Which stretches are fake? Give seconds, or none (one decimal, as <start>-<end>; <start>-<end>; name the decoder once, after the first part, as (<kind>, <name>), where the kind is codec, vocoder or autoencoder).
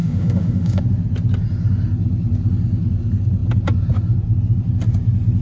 0.0-0.8 (autoencoder, DAC-VAE)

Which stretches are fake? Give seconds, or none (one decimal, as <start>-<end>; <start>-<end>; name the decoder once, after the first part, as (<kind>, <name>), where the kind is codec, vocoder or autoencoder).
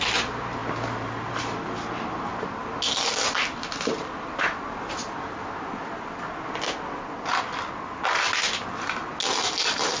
none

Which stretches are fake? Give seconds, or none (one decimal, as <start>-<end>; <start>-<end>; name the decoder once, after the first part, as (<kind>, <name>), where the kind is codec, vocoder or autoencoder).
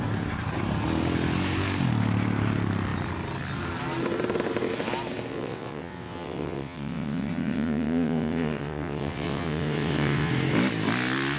5.3-10.3 (vocoder, WaveNeXt)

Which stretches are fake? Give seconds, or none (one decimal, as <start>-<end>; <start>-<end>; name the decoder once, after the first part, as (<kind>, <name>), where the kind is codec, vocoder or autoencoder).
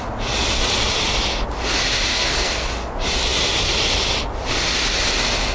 2.1-2.7 (codec, SNAC)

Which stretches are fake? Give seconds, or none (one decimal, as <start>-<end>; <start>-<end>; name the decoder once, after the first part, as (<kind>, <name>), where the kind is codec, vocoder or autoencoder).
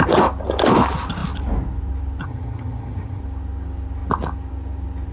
2.2-3.2 (vocoder, HiFi-GAN)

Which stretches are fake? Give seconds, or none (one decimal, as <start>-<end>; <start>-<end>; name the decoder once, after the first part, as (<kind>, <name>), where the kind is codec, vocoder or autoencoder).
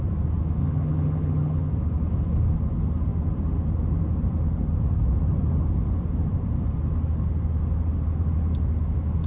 0.6-1.7 (vocoder, HiFi-GAN)